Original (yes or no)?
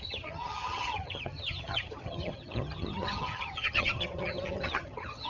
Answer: no